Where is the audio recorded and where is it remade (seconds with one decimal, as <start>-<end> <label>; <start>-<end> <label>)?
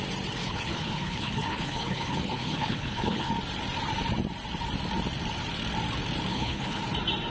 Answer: 0.0-0.4 recorded; 0.4-3.3 remade; 3.3-6.3 recorded; 6.3-6.8 remade; 6.8-7.3 recorded